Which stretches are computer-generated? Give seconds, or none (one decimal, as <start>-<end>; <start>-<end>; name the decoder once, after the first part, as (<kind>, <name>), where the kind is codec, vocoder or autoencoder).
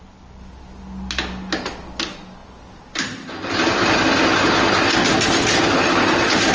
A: none